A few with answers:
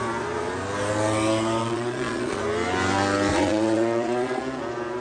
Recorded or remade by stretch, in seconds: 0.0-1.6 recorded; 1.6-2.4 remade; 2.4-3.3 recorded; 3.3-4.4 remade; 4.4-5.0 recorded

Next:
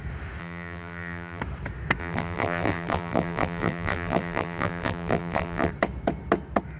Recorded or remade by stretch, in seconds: 0.0-0.4 recorded; 0.4-1.4 remade; 1.4-2.0 recorded; 2.0-5.7 remade; 5.7-6.8 recorded

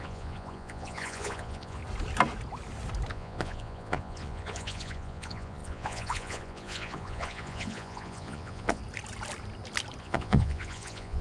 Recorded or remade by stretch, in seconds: 0.0-1.8 remade; 1.8-3.1 recorded; 3.1-8.8 remade; 8.8-10.0 recorded; 10.0-11.2 remade

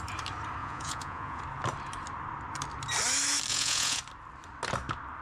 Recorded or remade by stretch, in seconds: 0.0-0.6 recorded; 0.6-1.4 remade; 1.4-3.5 recorded; 3.5-4.0 remade; 4.0-5.2 recorded

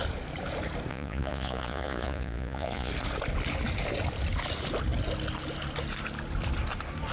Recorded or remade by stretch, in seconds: 0.0-0.9 recorded; 0.9-2.9 remade; 2.9-7.1 recorded

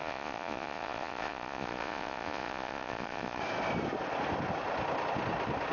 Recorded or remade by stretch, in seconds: 0.0-3.4 remade; 3.4-5.7 recorded

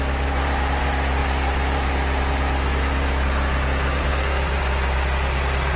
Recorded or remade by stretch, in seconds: 0.0-5.8 recorded

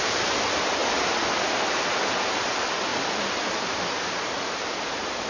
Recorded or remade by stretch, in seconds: 0.0-5.3 recorded